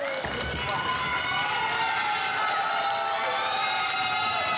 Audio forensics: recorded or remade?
recorded